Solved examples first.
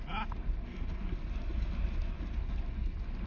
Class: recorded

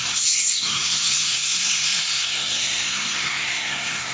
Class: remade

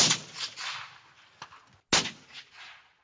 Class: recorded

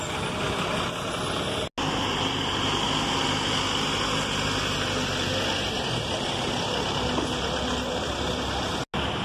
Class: recorded